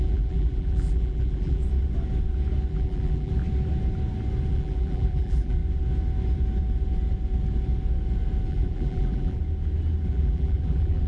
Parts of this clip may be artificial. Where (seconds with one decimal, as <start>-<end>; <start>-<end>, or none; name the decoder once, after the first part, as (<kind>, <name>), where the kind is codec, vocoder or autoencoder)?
0.0-1.6 (vocoder, BigVGAN v2); 2.7-3.4; 4.5-5.6; 8.5-9.4; 10.1-11.1